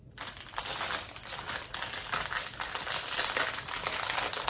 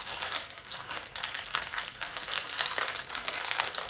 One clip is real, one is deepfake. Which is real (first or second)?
first